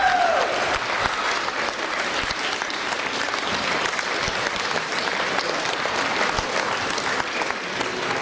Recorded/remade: recorded